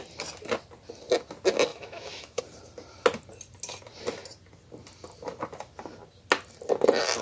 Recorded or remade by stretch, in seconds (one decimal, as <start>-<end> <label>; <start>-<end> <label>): 0.0-1.7 recorded; 1.7-2.4 remade; 2.4-7.2 recorded